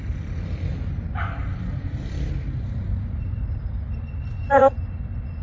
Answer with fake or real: real